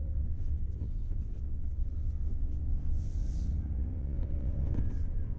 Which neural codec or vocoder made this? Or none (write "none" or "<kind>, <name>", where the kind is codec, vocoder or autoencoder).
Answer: vocoder, WaveNeXt